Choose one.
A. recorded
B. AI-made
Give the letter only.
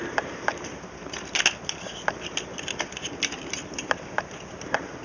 A